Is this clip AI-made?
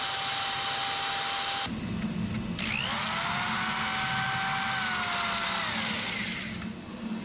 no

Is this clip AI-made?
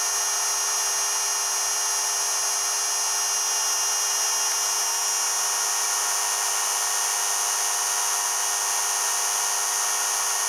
no